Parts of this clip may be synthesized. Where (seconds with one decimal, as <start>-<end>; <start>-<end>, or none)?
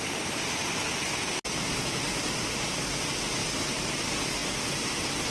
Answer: none